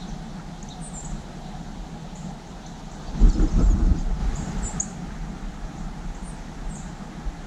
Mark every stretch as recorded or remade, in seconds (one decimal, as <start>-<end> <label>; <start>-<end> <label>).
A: 0.0-7.5 recorded